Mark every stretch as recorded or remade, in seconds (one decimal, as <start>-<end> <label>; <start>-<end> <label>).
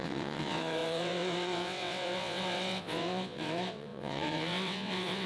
0.0-5.3 remade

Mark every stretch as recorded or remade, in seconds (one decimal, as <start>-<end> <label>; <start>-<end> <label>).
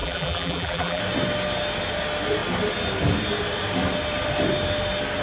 0.0-1.0 remade; 1.0-5.2 recorded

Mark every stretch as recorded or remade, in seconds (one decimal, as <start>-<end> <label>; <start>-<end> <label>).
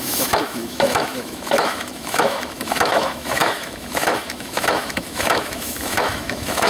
0.0-6.7 remade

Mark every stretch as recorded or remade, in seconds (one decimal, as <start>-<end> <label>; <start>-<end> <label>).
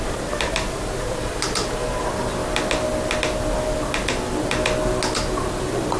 0.0-6.0 recorded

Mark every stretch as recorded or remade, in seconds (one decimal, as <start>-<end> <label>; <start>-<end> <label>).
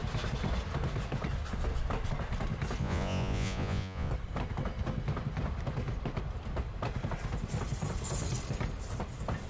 0.0-2.8 recorded; 2.8-4.1 remade; 4.1-9.5 recorded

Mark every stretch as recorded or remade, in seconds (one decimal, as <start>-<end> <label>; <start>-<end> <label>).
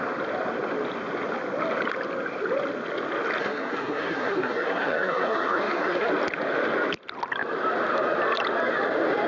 0.0-3.4 recorded; 3.4-6.1 remade; 6.1-9.3 recorded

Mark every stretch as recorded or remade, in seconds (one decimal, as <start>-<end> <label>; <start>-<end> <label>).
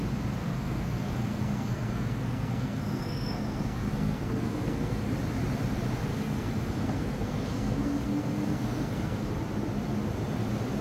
0.0-0.4 recorded; 0.4-5.1 remade; 5.1-6.1 recorded; 6.1-9.3 remade; 9.3-10.8 recorded